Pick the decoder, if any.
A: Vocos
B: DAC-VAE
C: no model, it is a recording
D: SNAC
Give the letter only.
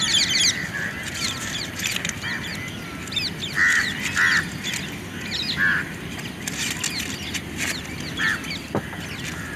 C